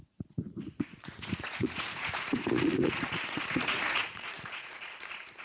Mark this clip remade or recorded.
remade